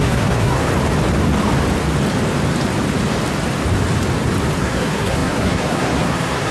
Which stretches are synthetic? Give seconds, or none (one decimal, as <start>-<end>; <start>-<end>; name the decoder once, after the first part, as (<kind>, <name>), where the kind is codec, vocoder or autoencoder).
0.0-0.7 (codec, SNAC); 4.6-6.5